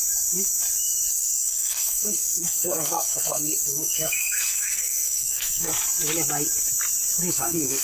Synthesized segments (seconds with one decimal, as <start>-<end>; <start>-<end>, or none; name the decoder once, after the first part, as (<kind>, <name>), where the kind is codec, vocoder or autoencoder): 1.1-5.7 (codec, SNAC); 7.3-7.8